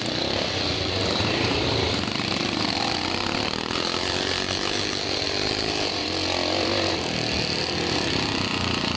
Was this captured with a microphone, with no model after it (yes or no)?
no